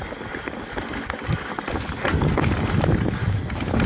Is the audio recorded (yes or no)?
yes